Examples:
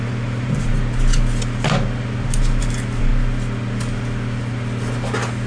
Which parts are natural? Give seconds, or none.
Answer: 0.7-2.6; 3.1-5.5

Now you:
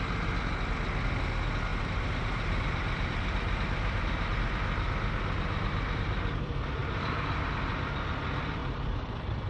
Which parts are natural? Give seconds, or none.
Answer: 0.0-1.7; 4.5-6.8; 7.5-8.6

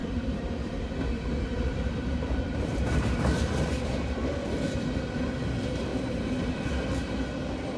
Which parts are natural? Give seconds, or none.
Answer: 4.3-5.9; 6.9-7.8